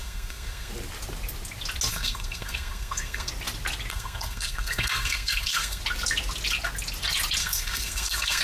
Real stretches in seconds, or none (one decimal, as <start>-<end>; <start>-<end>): 0.7-1.9; 3.3-3.9; 5.8-7.4